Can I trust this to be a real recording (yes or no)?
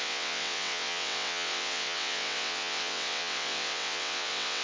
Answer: no